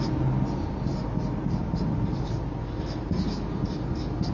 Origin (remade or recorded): recorded